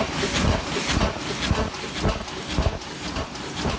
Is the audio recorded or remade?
recorded